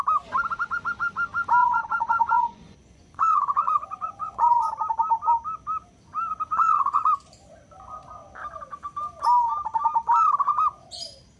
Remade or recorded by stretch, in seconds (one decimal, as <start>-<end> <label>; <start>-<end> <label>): 0.0-1.6 recorded; 1.6-4.7 remade; 4.7-6.5 recorded; 6.5-7.1 remade; 7.1-11.4 recorded